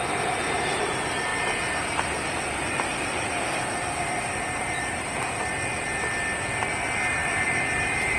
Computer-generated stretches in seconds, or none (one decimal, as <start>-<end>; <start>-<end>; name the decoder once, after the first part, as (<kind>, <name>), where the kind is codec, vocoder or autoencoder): 1.3-5.4 (vocoder, BigVGAN v2); 7.2-8.2